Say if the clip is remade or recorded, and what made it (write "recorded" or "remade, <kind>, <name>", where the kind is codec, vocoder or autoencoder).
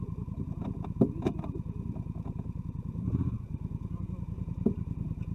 remade, vocoder, Vocos